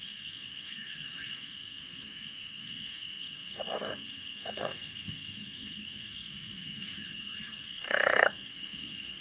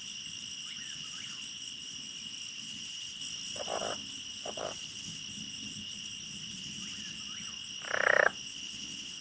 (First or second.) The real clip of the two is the second